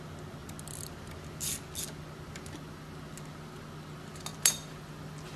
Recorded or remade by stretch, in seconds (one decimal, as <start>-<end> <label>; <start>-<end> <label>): 0.0-5.4 recorded